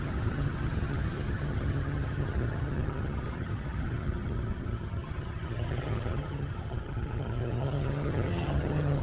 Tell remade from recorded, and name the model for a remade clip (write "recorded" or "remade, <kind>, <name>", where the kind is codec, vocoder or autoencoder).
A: remade, vocoder, HiFi-GAN